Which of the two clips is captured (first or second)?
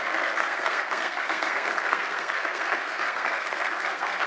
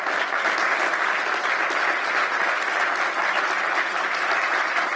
second